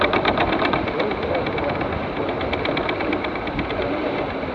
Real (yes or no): yes